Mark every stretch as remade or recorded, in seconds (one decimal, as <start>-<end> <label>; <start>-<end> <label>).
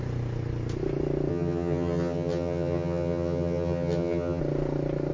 0.0-1.3 recorded; 1.3-4.4 remade; 4.4-5.1 recorded